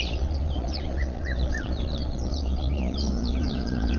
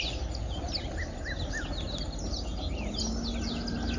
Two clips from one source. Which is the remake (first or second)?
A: first